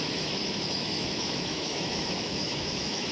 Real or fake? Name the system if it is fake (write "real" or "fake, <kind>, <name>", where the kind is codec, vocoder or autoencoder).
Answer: fake, autoencoder, DAC-VAE